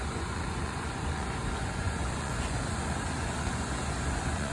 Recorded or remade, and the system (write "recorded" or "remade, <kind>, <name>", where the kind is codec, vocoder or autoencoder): remade, vocoder, Vocos